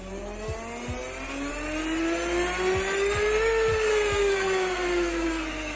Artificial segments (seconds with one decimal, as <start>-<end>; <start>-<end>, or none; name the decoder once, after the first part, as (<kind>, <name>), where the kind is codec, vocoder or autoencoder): 3.7-5.8 (codec, SNAC)